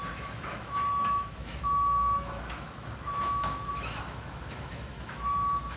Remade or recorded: remade